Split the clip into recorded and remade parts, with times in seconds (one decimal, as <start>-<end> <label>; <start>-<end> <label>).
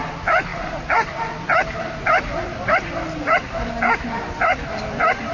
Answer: 0.0-0.5 recorded; 0.5-3.7 remade; 3.7-5.3 recorded